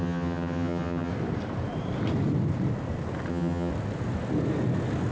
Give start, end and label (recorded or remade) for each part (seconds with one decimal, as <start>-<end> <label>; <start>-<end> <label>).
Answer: 0.0-1.1 remade; 1.1-3.3 recorded; 3.3-3.7 remade; 3.7-5.1 recorded